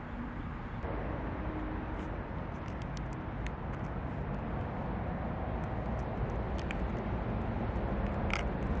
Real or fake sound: real